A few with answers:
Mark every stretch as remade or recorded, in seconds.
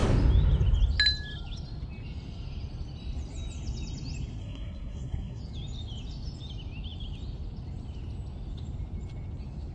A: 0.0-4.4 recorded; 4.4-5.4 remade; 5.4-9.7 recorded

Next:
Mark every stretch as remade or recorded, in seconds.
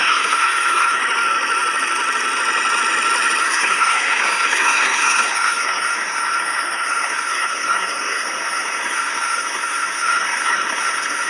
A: 0.0-1.0 remade; 1.0-3.4 recorded; 3.4-11.3 remade